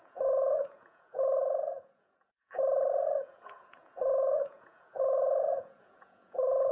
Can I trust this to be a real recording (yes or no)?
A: no